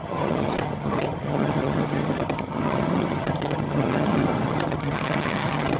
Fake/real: fake